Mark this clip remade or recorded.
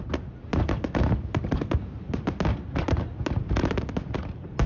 recorded